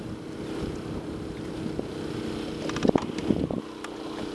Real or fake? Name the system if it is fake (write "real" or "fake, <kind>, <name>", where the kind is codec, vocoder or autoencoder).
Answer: real